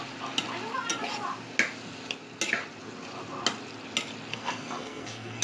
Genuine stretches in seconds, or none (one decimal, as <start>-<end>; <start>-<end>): 0.0-4.3